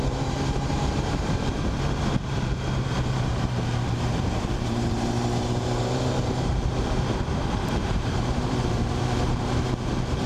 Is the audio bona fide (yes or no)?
no